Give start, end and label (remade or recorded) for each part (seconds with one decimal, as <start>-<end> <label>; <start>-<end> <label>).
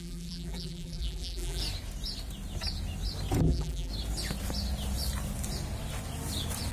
0.0-1.6 remade; 1.6-3.4 recorded; 3.4-3.9 remade; 3.9-6.7 recorded